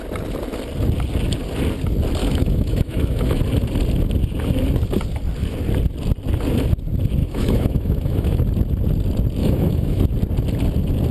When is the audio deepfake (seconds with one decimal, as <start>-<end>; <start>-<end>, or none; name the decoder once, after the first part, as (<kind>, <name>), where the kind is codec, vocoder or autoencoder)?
2.2-3.4 (autoencoder, DAC-VAE); 7.2-8.4; 9.4-10.0